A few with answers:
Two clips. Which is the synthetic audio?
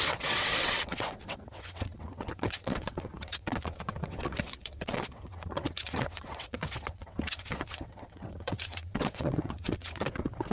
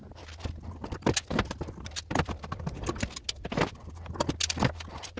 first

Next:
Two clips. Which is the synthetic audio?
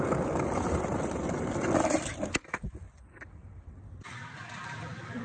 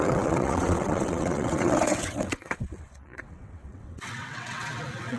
second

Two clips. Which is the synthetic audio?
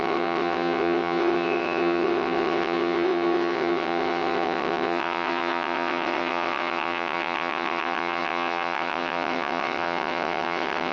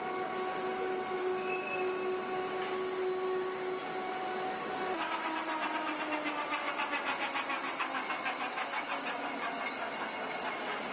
first